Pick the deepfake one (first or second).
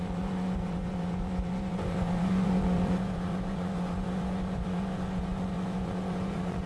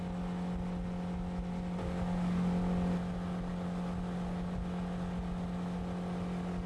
first